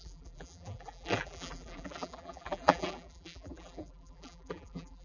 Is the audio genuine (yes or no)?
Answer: no